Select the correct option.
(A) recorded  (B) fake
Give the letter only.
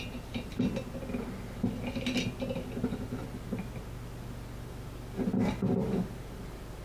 A